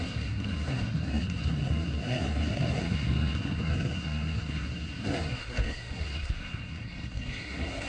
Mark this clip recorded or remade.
remade